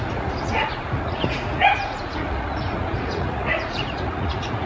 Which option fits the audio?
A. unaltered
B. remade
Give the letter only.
B